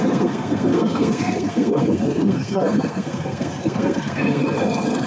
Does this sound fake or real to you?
fake